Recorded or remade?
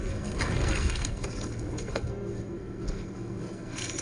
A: remade